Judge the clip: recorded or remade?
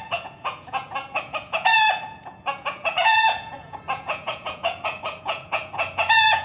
remade